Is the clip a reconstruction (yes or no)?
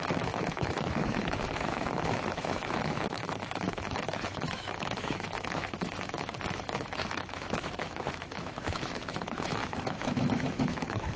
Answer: yes